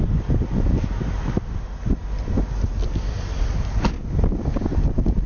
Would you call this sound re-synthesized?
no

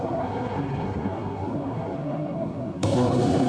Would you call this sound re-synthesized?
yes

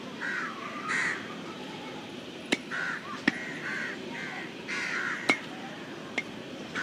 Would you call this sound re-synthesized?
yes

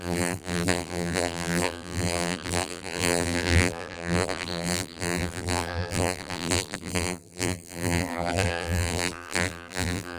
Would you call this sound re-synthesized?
yes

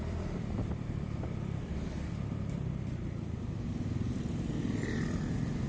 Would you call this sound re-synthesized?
yes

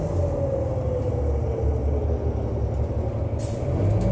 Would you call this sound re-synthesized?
no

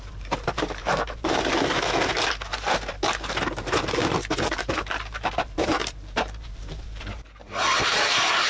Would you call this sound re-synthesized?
yes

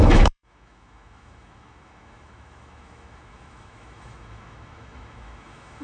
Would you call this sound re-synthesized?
yes